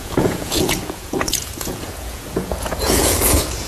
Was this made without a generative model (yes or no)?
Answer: no